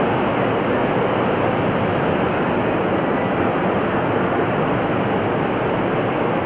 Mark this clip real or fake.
real